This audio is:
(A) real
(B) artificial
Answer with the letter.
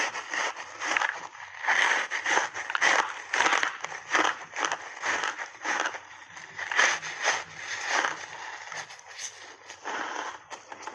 A